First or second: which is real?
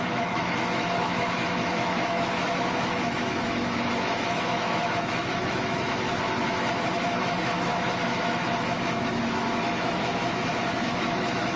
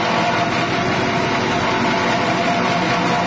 second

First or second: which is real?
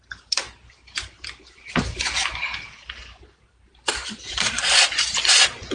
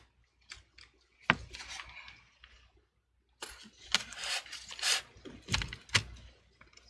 second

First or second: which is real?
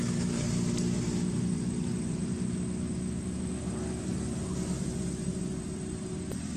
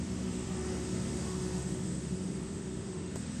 first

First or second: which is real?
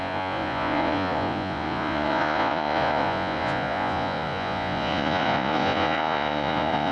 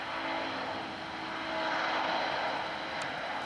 second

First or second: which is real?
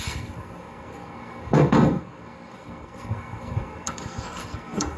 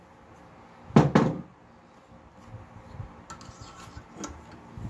second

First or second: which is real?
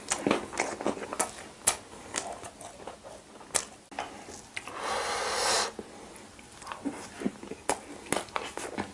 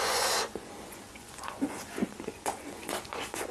first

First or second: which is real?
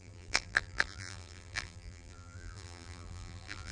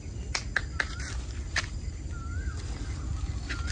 second